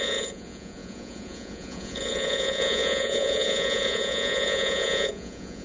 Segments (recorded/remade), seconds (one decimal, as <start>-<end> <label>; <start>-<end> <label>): 0.0-5.6 remade